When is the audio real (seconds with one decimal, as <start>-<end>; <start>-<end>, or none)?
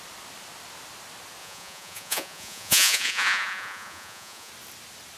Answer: 0.0-1.4; 4.5-5.2